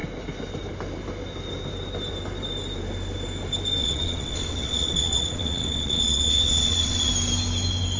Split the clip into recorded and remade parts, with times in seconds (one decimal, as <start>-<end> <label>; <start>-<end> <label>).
0.0-3.8 recorded; 3.8-7.1 remade; 7.1-8.0 recorded